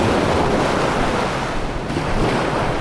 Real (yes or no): yes